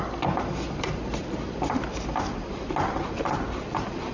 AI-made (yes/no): no